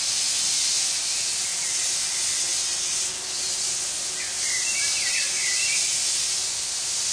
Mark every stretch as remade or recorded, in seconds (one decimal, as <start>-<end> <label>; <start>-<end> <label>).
0.0-7.1 recorded